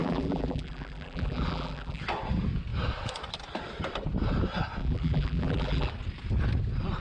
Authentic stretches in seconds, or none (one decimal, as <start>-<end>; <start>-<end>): 2.0-4.8; 5.9-7.0